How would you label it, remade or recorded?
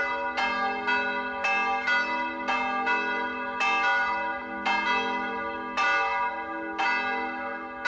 recorded